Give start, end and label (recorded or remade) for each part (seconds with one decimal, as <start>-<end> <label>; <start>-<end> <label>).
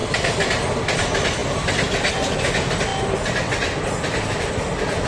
0.0-5.1 recorded